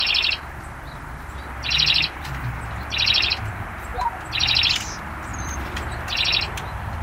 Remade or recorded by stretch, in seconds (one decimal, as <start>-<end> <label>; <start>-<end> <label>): 0.0-5.3 recorded; 5.3-6.0 remade; 6.0-7.0 recorded

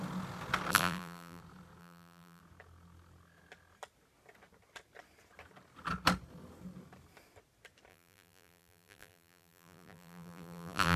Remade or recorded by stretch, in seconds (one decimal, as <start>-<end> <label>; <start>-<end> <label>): 0.0-0.7 recorded; 0.7-1.4 remade; 1.4-1.8 recorded; 1.8-2.4 remade; 2.4-7.9 recorded; 7.9-11.0 remade

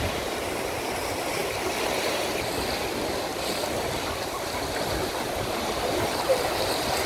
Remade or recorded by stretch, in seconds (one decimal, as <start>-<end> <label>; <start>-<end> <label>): 0.0-7.1 recorded

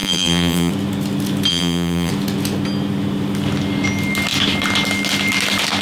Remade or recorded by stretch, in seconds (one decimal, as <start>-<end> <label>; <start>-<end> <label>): 0.0-0.7 remade; 0.7-1.5 recorded; 1.5-2.1 remade; 2.1-5.8 recorded

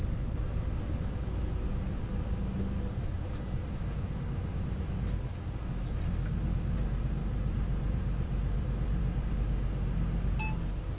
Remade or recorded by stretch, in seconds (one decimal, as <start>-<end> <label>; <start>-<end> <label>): 0.0-7.2 recorded; 7.2-9.3 remade; 9.3-11.0 recorded